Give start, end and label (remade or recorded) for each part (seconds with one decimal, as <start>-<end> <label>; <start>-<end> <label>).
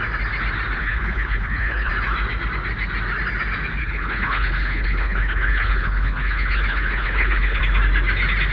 0.0-0.8 recorded; 0.8-1.9 remade; 1.9-3.8 recorded; 3.8-7.6 remade; 7.6-8.5 recorded